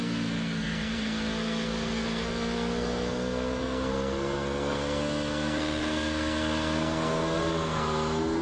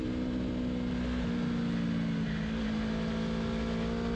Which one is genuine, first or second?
second